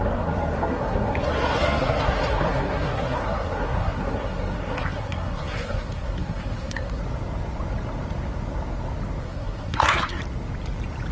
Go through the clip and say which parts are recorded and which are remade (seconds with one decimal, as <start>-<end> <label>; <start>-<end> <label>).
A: 0.0-7.0 remade; 7.0-9.2 recorded; 9.2-10.2 remade; 10.2-11.1 recorded